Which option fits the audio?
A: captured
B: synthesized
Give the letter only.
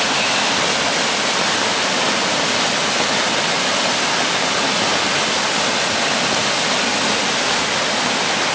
A